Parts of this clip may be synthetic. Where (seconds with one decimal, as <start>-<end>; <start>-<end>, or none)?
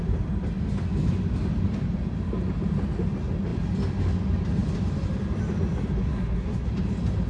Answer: 6.0-6.7